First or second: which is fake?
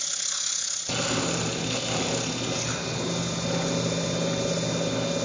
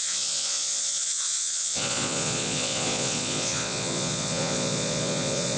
second